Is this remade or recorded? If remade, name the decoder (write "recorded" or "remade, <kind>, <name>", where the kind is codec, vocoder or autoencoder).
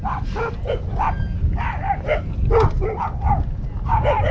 recorded